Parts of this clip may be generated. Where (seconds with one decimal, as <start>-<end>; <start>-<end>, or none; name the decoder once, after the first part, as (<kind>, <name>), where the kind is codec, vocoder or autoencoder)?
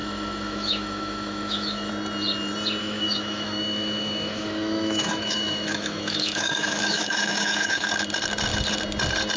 0.0-1.9 (autoencoder, DAC-VAE); 2.8-7.9